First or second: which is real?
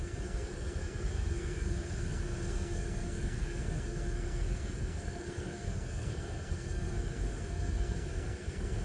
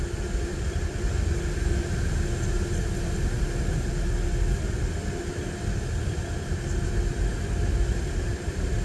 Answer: second